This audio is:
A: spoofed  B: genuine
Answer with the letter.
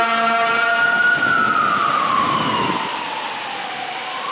B